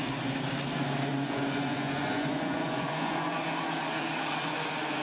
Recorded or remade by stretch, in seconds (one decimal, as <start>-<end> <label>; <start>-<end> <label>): 0.0-1.1 recorded; 1.1-3.4 remade; 3.4-5.0 recorded

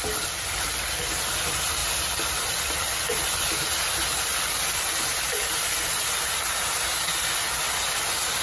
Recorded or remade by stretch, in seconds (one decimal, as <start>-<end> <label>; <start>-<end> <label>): 0.0-5.1 recorded; 5.1-6.0 remade; 6.0-8.4 recorded

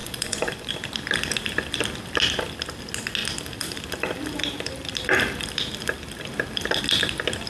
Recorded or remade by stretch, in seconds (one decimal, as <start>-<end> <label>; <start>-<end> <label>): 0.0-0.7 remade; 0.7-7.5 recorded

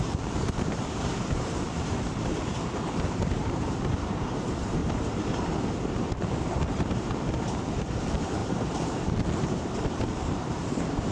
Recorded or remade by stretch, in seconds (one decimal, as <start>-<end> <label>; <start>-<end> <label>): 0.0-4.8 remade; 4.8-6.0 recorded; 6.0-11.1 remade

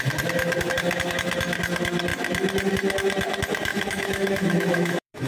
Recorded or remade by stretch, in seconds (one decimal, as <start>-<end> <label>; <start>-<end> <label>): 0.0-3.7 recorded; 3.7-5.3 remade